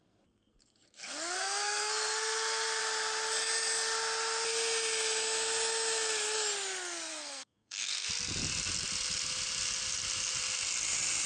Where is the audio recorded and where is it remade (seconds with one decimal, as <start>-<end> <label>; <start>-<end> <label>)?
0.0-2.8 remade; 2.8-7.1 recorded; 7.1-8.1 remade; 8.1-11.3 recorded